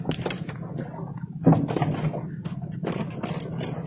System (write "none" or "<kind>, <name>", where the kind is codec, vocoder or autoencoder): none